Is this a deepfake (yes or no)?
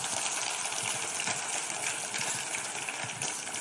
no